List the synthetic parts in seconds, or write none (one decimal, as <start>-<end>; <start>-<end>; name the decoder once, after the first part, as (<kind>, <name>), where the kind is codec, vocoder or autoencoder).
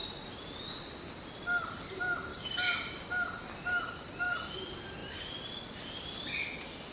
none